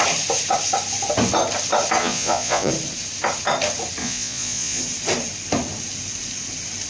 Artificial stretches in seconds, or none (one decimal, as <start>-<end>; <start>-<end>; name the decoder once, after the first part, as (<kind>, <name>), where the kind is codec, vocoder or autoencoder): 2.0-2.7 (vocoder, Vocos); 4.0-4.8